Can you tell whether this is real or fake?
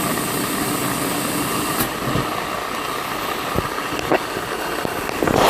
real